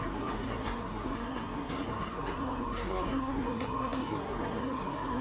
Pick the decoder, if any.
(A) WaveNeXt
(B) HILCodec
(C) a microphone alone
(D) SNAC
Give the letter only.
D